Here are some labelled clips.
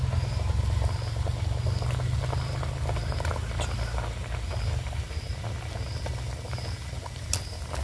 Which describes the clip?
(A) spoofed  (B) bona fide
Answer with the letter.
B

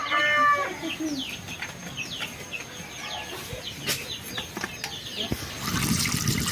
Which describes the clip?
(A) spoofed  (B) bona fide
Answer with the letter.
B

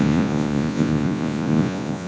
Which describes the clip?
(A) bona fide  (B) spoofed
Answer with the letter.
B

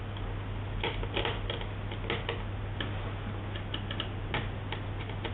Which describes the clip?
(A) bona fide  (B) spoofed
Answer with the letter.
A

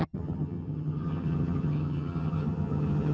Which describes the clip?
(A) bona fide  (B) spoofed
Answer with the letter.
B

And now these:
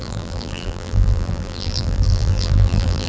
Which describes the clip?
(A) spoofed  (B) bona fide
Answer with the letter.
A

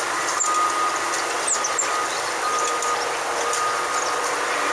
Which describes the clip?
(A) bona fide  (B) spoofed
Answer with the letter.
A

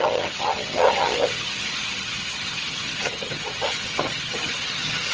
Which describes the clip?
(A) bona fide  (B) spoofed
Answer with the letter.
B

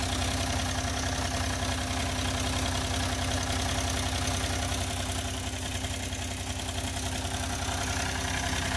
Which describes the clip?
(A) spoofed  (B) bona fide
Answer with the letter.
B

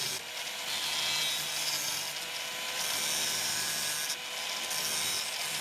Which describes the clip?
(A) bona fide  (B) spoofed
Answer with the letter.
A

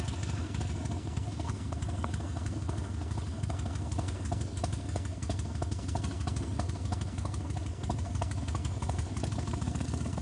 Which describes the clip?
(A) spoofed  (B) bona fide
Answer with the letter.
A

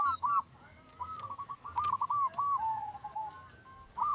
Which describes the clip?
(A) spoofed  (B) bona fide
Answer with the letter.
A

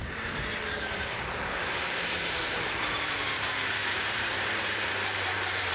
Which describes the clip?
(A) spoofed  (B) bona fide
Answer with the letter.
A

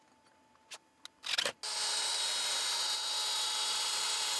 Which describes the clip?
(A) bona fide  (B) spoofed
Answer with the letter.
A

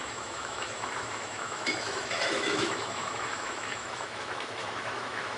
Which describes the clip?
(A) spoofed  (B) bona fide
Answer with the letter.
A